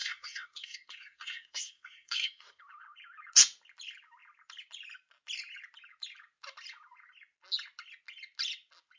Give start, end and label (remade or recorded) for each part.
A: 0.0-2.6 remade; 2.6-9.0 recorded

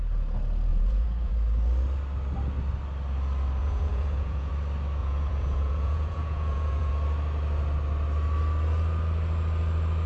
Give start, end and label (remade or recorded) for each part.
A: 0.0-0.7 recorded; 0.7-1.3 remade; 1.3-3.6 recorded; 3.6-4.5 remade; 4.5-5.0 recorded; 5.0-6.9 remade; 6.9-10.1 recorded

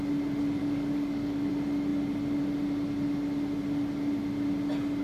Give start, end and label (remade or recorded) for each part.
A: 0.0-0.6 recorded; 0.6-1.5 remade; 1.5-5.0 recorded

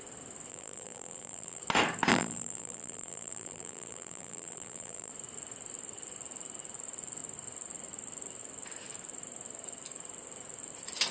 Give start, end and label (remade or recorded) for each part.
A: 0.0-0.5 recorded; 0.5-1.6 remade; 1.6-2.1 recorded; 2.1-5.1 remade; 5.1-11.1 recorded

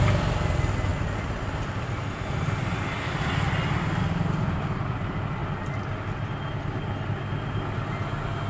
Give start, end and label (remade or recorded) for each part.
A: 0.0-8.5 recorded

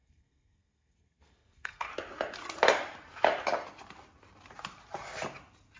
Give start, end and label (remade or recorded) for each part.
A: 0.0-1.9 remade; 1.9-5.8 recorded

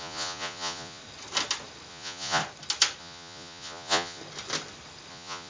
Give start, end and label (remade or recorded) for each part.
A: 0.0-1.0 remade; 1.0-1.9 recorded; 1.9-2.4 remade; 2.4-3.0 recorded; 3.0-4.2 remade; 4.2-5.1 recorded; 5.1-5.5 remade

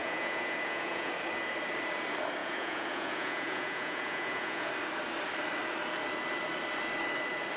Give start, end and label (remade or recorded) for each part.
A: 0.0-1.1 remade; 1.1-2.4 recorded; 2.4-4.7 remade; 4.7-7.6 recorded